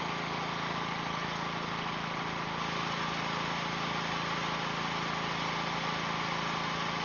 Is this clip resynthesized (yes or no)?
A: no